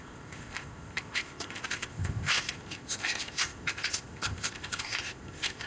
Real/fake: fake